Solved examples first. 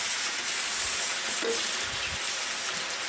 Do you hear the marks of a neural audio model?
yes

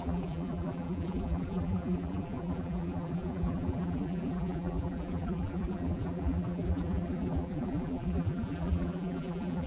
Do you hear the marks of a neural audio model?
yes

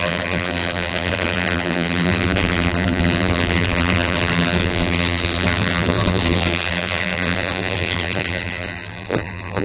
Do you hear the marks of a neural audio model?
yes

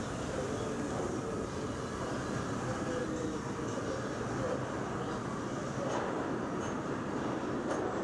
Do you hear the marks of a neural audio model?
no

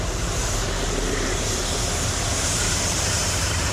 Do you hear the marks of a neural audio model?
yes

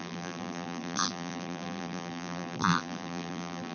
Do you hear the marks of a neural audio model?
yes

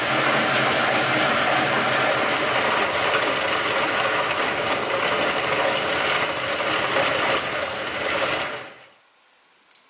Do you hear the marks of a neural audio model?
no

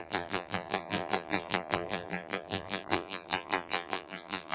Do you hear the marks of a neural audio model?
yes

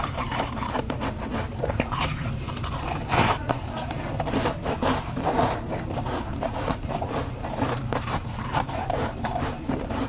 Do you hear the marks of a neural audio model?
yes